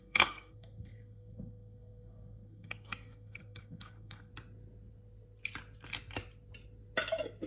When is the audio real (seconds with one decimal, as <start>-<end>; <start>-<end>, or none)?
4.3-7.5